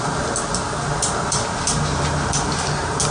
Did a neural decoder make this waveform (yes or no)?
no